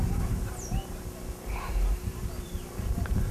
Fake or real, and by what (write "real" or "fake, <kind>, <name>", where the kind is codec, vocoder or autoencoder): fake, vocoder, BigVGAN v2